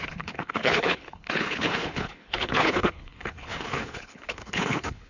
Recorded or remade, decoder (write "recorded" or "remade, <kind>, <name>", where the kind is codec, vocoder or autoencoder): remade, codec, HILCodec